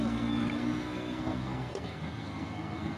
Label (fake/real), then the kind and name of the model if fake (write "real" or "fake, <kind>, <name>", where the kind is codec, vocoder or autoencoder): fake, codec, SNAC